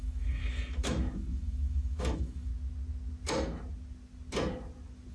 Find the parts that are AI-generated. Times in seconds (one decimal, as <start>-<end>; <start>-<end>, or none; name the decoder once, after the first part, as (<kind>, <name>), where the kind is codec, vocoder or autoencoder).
0.0-2.5 (autoencoder, DAC-VAE)